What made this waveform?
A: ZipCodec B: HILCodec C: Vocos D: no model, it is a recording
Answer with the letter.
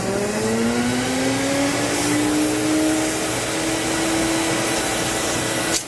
D